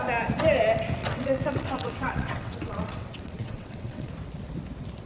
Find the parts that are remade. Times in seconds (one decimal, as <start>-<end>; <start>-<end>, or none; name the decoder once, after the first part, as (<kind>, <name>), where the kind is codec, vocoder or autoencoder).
1.0-4.1 (vocoder, WaveNeXt)